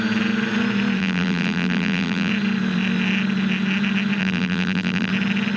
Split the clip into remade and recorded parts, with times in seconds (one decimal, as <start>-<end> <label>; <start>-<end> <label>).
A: 0.0-1.0 recorded; 1.0-2.3 remade; 2.3-4.2 recorded; 4.2-5.1 remade; 5.1-5.6 recorded